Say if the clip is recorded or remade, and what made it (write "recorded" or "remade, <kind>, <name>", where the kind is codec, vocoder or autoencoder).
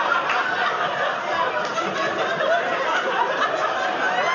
recorded